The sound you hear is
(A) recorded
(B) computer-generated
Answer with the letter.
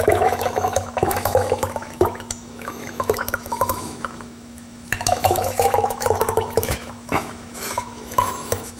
B